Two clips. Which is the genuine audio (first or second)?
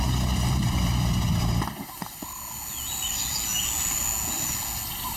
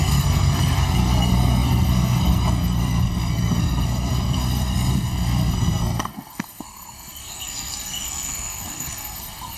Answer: first